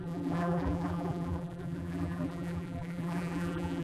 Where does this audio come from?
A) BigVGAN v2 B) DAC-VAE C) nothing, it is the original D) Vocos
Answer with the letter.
A